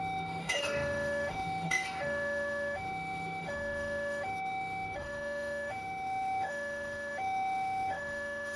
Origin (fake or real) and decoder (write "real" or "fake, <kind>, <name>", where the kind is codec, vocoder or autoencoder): fake, autoencoder, DAC-VAE